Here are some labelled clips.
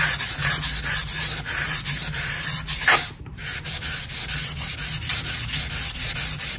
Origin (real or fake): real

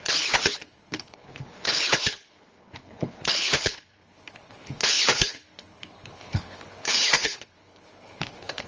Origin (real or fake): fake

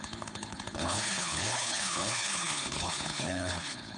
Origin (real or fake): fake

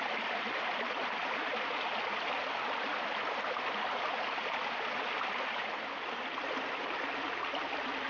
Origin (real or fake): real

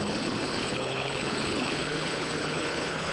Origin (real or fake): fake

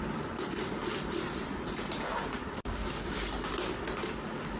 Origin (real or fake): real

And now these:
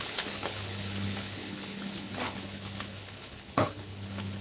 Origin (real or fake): fake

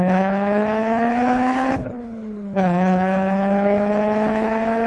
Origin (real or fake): fake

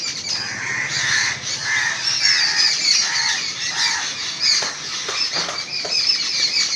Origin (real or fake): real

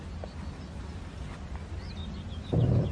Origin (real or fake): real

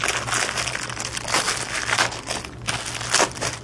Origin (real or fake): real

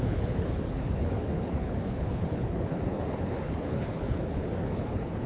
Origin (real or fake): fake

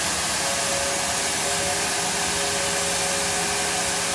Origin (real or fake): real